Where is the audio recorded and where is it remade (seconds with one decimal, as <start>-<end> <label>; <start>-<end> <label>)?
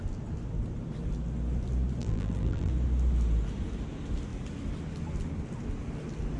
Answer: 0.0-2.0 recorded; 2.0-2.7 remade; 2.7-6.4 recorded